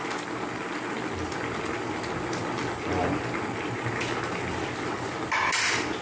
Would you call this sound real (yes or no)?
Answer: yes